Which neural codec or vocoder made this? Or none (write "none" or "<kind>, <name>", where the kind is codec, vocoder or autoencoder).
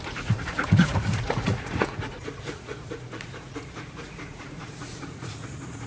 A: vocoder, Vocos